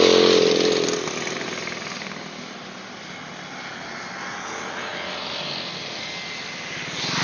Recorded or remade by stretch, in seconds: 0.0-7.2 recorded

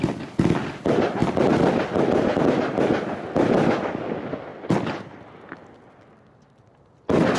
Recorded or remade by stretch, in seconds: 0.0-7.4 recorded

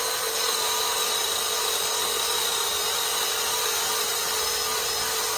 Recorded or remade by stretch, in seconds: 0.0-0.9 recorded; 0.9-4.1 remade; 4.1-5.4 recorded